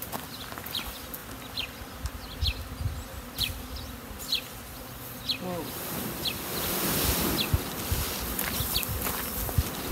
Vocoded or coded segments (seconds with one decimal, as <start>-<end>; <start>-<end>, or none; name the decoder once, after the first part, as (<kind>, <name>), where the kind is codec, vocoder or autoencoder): none